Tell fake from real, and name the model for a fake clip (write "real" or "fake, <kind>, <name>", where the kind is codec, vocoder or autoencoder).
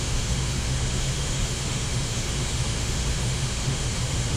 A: fake, autoencoder, DAC-VAE